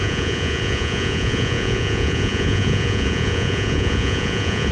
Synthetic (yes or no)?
yes